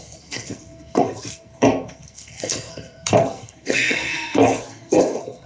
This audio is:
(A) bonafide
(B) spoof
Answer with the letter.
B